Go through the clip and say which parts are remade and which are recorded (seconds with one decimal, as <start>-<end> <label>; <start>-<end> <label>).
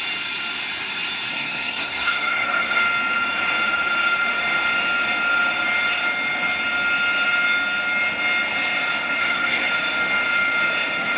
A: 0.0-1.3 recorded; 1.3-2.8 remade; 2.8-9.2 recorded; 9.2-9.7 remade; 9.7-11.2 recorded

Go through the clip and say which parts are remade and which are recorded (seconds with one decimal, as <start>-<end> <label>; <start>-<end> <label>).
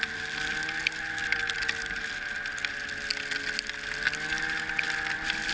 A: 0.0-5.5 recorded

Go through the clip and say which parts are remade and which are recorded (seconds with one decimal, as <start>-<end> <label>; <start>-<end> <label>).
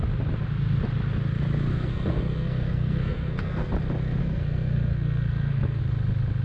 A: 0.0-1.7 recorded; 1.7-3.7 remade; 3.7-4.2 recorded; 4.2-5.8 remade; 5.8-6.4 recorded